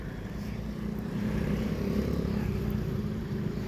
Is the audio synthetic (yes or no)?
yes